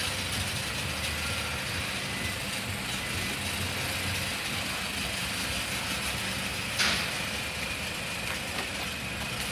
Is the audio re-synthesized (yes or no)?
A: no